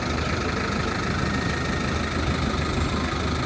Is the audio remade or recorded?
recorded